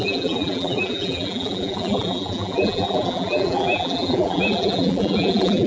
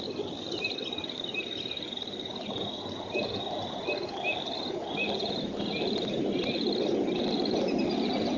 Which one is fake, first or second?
first